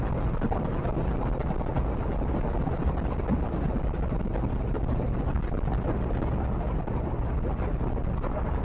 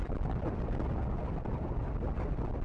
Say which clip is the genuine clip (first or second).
first